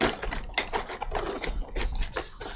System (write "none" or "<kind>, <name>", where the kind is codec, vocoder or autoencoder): none